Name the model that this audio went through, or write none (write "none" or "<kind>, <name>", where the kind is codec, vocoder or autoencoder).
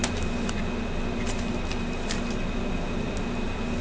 none